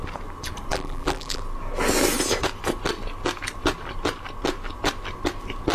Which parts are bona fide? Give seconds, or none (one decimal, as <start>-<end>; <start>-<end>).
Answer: 0.0-0.7; 1.4-5.7